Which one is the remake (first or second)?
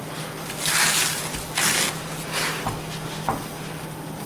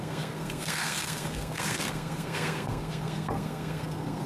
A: second